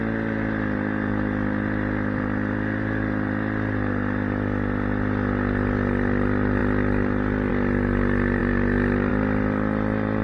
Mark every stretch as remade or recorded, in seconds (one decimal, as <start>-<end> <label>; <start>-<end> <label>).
0.0-10.2 recorded